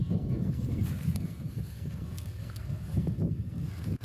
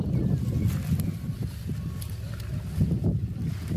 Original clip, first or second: second